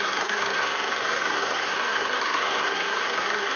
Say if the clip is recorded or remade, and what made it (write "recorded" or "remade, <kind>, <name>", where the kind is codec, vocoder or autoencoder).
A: remade, codec, SNAC